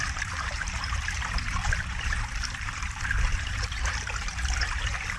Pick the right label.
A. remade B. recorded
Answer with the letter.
A